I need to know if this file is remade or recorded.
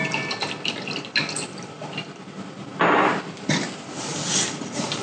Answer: recorded